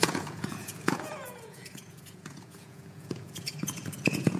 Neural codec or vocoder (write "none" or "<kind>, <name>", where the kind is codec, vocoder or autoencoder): vocoder, Vocos